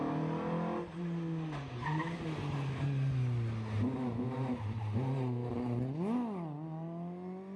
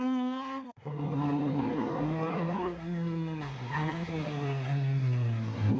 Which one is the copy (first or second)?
second